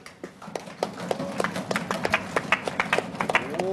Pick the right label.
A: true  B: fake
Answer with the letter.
A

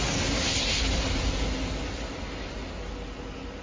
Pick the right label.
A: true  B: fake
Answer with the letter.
A